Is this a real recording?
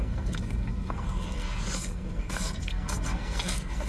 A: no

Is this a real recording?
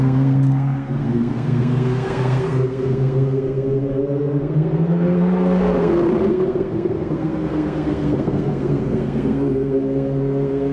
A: no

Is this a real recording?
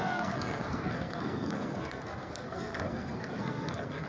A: no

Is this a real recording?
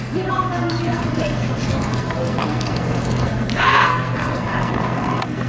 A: no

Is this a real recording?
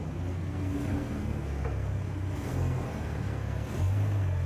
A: no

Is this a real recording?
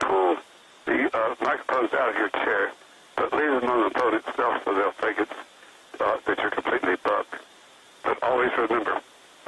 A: yes